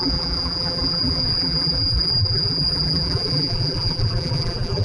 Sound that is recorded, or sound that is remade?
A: remade